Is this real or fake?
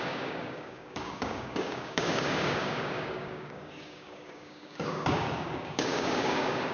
fake